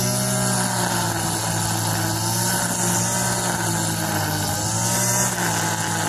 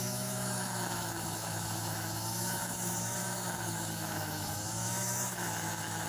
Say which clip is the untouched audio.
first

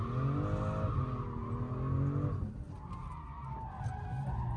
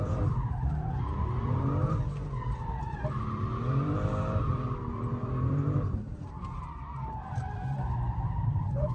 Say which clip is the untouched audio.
first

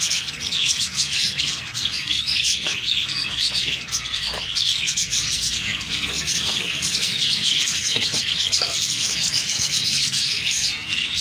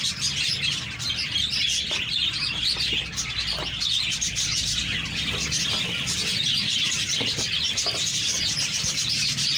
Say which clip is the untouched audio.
second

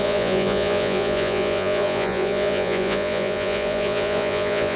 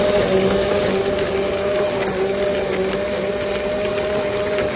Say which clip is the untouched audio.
second